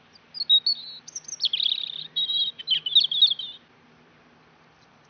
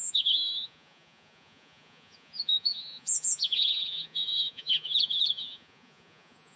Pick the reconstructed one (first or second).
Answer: second